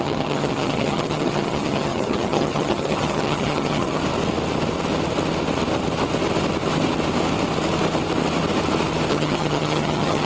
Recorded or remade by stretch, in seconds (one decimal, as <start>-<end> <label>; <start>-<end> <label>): 0.0-4.0 remade; 4.0-9.1 recorded; 9.1-10.3 remade